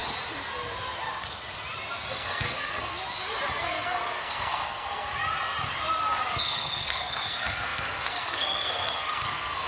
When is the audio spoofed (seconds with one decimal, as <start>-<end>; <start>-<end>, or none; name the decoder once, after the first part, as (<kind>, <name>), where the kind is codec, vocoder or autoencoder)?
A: 2.1-2.9 (codec, SNAC); 3.5-5.1; 6.4-9.7